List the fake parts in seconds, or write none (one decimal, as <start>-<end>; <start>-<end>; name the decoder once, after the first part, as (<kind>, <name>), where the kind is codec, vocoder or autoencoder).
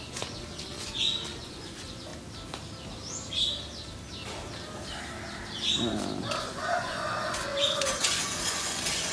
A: 0.0-2.1 (vocoder, Vocos); 6.4-9.1